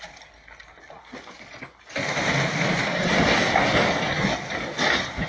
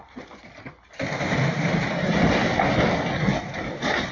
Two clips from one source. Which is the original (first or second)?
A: first